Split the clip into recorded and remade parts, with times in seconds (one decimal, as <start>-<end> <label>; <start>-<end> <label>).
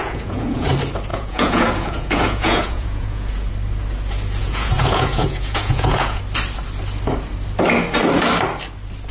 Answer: 0.0-0.7 remade; 0.7-1.1 recorded; 1.1-3.5 remade; 3.5-4.4 recorded; 4.4-6.2 remade; 6.2-9.1 recorded